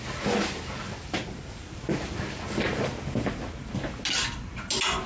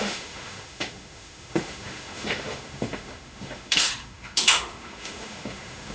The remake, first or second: second